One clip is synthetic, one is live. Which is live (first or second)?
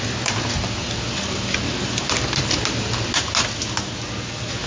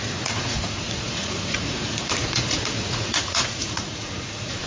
first